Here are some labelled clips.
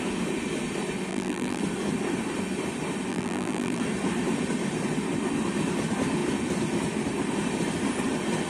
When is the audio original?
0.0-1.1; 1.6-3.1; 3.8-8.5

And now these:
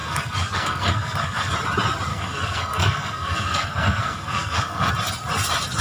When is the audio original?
1.5-2.1; 4.9-5.8

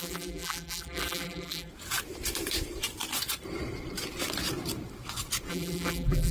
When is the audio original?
1.7-5.5

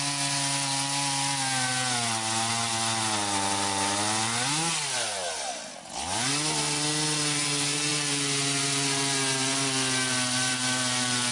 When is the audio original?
0.0-11.3

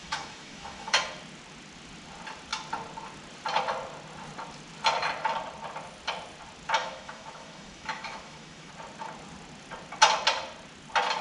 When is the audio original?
1.0-6.8; 8.7-11.2

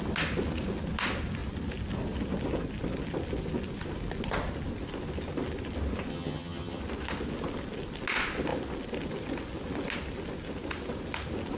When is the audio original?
0.0-6.1; 6.8-11.6

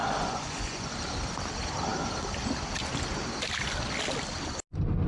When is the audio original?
0.9-5.1